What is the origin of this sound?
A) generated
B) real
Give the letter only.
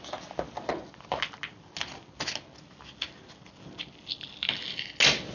B